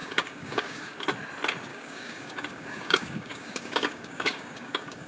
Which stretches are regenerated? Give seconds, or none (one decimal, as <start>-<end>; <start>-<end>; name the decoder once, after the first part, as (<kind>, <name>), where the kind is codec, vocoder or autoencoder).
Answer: 0.0-1.0 (codec, DAC); 1.7-5.1